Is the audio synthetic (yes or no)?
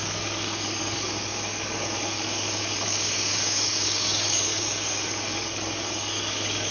yes